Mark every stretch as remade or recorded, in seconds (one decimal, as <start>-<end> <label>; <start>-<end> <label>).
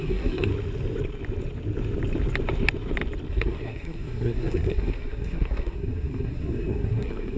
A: 0.0-0.5 remade; 0.5-3.3 recorded; 3.3-7.4 remade